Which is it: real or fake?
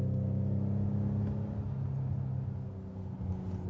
real